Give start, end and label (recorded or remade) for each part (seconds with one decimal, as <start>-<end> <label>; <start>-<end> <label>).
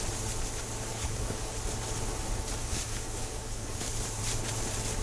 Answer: 0.0-0.9 recorded; 0.9-1.5 remade; 1.5-2.6 recorded; 2.6-3.9 remade; 3.9-5.0 recorded